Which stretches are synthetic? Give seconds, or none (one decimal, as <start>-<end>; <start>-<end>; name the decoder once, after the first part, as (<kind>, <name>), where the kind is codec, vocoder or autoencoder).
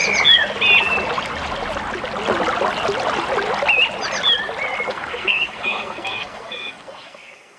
4.9-7.6 (codec, SNAC)